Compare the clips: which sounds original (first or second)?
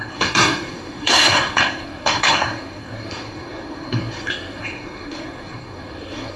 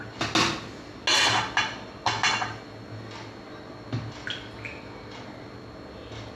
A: second